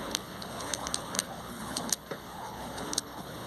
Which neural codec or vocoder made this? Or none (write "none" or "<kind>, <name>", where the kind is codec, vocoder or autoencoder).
codec, HILCodec